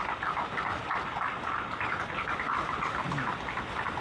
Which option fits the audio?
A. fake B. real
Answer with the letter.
B